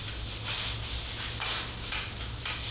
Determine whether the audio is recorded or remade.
recorded